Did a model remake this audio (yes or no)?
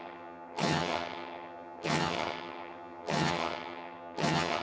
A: yes